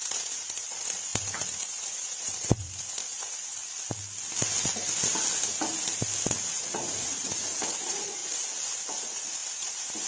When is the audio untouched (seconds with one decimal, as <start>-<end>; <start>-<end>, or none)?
3.6-6.5; 8.2-9.0